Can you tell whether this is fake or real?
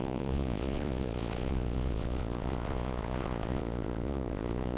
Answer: fake